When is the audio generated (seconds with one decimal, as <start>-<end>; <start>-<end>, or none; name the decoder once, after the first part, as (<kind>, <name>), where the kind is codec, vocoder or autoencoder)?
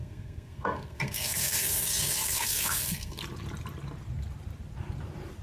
0.0-3.2 (codec, SNAC)